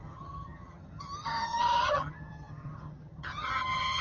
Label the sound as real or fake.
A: fake